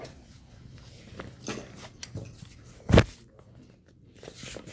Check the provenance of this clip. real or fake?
real